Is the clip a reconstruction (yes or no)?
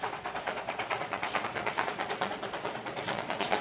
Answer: yes